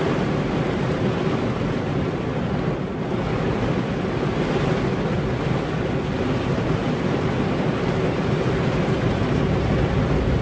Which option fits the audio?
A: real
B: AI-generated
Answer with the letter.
A